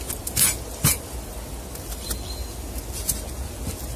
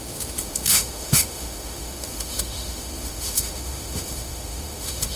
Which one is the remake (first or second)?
second